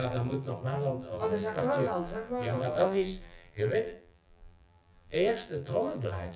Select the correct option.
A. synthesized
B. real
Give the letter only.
A